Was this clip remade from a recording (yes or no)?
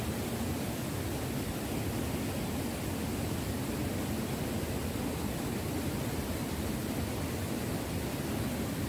no